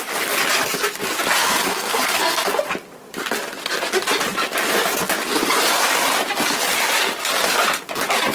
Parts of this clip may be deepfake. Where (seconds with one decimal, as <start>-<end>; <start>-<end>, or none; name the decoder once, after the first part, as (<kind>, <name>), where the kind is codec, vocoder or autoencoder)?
1.4-2.6 (codec, SNAC)